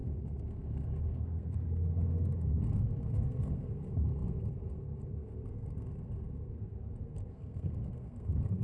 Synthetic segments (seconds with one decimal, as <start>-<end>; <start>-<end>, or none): 0.0-8.6